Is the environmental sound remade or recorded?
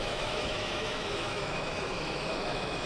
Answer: remade